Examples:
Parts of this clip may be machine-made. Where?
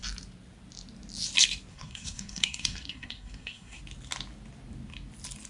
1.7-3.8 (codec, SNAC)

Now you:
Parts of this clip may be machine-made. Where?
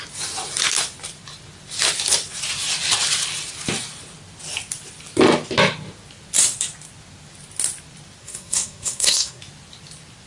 8.2-9.4 (codec, SNAC)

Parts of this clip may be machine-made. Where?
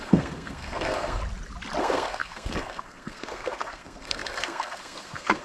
0.0-1.2 (codec, SNAC); 1.8-5.4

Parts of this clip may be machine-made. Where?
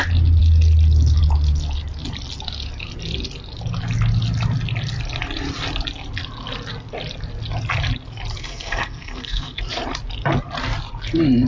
8.4-9.6 (codec, SNAC)